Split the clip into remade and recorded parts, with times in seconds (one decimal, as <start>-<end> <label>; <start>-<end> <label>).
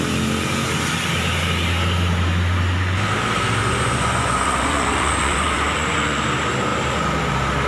0.0-3.6 recorded; 3.6-6.2 remade; 6.2-7.7 recorded